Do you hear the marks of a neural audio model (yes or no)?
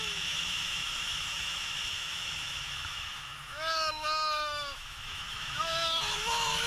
yes